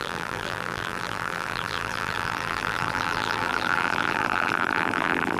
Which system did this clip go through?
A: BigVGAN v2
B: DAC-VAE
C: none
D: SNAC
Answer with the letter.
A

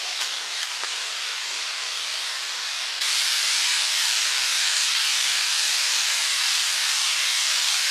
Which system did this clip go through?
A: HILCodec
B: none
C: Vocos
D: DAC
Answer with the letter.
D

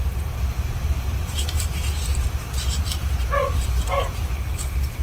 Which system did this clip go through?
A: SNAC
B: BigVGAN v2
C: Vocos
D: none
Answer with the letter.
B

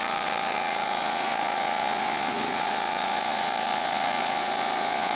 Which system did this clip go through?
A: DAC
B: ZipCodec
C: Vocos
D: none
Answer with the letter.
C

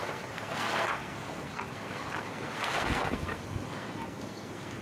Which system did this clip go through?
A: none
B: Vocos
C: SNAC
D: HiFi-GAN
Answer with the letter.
C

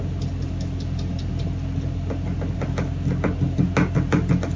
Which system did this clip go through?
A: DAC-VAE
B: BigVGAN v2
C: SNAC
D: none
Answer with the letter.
D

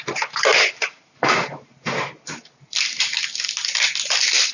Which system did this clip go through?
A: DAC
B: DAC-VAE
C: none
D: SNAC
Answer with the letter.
C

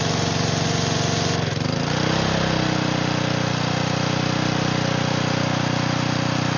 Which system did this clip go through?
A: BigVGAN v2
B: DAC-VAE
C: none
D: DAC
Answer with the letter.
C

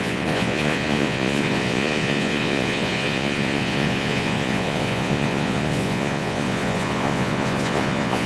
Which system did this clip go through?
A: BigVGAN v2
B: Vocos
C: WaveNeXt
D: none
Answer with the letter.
B